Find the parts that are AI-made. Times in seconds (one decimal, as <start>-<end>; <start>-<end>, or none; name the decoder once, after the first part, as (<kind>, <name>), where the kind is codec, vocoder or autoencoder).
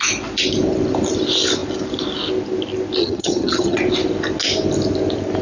3.0-3.8 (vocoder, HiFi-GAN)